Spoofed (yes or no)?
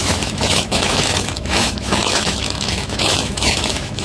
yes